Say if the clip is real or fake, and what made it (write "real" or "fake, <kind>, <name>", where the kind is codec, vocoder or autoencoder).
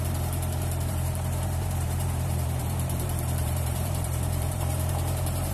fake, vocoder, BigVGAN v2